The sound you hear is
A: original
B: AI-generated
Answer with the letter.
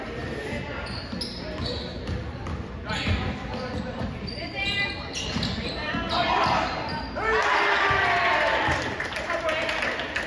A